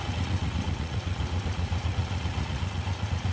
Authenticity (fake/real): fake